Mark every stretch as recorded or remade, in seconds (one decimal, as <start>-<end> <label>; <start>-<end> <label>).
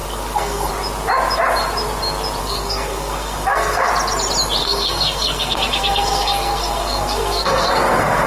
0.0-0.7 remade; 0.7-2.4 recorded; 2.4-3.9 remade; 3.9-4.6 recorded; 4.6-8.3 remade